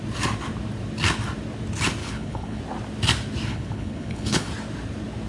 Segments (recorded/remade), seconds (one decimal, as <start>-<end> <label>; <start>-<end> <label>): 0.0-2.0 recorded; 2.0-2.6 remade; 2.6-3.5 recorded; 3.5-4.5 remade; 4.5-5.3 recorded